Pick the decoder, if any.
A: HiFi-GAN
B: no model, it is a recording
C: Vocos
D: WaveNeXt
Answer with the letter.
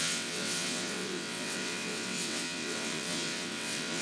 D